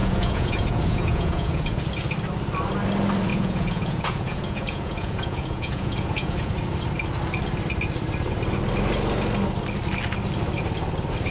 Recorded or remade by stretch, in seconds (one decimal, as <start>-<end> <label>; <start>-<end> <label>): 0.0-1.8 remade; 1.8-3.3 recorded; 3.3-6.5 remade; 6.5-11.3 recorded

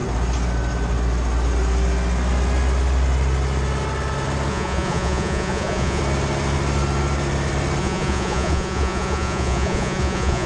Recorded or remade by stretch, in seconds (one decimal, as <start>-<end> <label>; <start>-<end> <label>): 0.0-4.5 recorded; 4.5-6.0 remade; 6.0-7.8 recorded; 7.8-10.5 remade

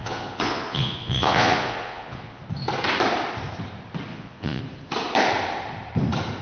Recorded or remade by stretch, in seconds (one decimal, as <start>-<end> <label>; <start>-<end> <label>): 0.0-2.4 remade; 2.4-4.1 recorded; 4.1-4.6 remade; 4.6-6.4 recorded

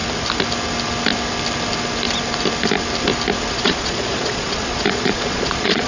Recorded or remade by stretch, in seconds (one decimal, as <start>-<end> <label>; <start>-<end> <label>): 0.0-3.5 recorded; 3.5-5.9 remade